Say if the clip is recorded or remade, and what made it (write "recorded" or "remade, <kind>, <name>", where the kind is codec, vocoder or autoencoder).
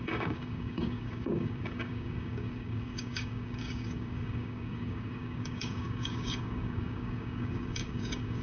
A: remade, codec, DAC